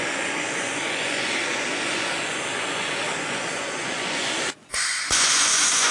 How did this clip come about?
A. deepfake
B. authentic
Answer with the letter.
A